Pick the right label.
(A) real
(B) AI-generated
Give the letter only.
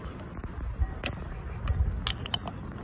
A